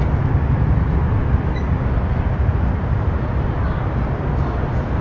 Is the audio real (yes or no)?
yes